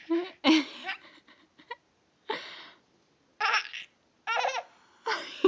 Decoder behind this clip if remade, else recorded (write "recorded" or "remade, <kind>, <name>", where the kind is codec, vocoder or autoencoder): recorded